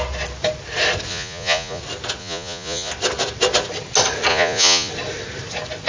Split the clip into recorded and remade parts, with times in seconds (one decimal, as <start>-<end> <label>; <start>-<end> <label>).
0.0-1.1 recorded; 1.1-1.8 remade; 1.8-2.2 recorded; 2.2-2.9 remade; 2.9-4.3 recorded; 4.3-4.9 remade; 4.9-5.9 recorded